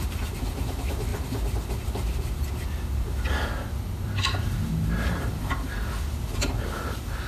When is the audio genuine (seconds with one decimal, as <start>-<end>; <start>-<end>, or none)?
none